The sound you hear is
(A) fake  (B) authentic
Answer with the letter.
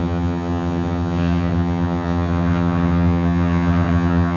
A